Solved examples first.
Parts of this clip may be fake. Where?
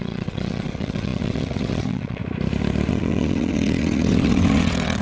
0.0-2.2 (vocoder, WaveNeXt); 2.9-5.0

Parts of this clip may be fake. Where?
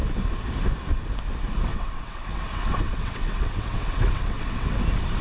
1.7-4.8 (vocoder, WaveNeXt)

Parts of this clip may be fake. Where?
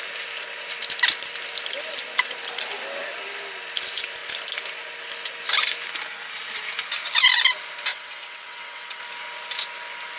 7.9-9.0 (vocoder, WaveNeXt)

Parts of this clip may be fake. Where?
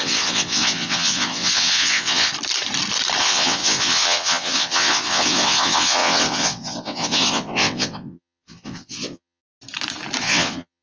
0.0-2.3 (vocoder, WaveNeXt); 3.2-9.4; 10.2-10.8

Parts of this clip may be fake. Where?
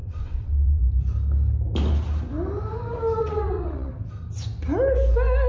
0.0-0.8 (vocoder, WaveNeXt); 3.2-3.9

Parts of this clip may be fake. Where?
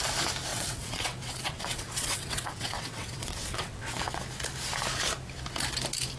0.5-4.2 (vocoder, WaveNeXt)